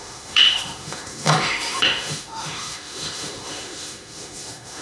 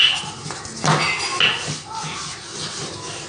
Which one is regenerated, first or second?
first